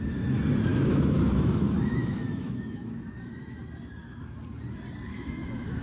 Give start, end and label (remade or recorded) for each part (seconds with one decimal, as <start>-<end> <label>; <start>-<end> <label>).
0.0-0.7 recorded; 0.7-3.6 remade; 3.6-5.1 recorded; 5.1-5.8 remade